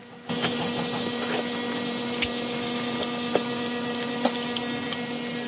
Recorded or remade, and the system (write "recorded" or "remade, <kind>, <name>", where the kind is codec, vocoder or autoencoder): recorded